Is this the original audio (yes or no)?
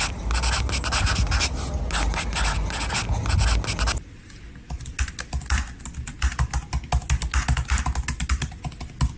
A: yes